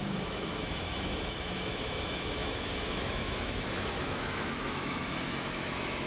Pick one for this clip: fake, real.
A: fake